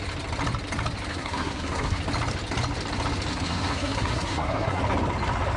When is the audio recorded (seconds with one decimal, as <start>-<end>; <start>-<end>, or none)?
0.0-1.1; 2.0-3.3; 4.8-5.6